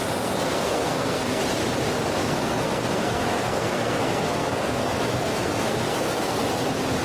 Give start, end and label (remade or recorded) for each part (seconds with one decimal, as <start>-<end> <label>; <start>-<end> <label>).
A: 0.0-1.4 remade; 1.4-2.2 recorded; 2.2-6.4 remade; 6.4-7.0 recorded